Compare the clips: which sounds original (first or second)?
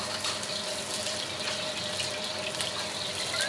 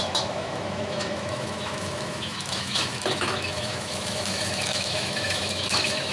first